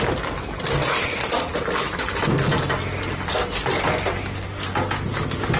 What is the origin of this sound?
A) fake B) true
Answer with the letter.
B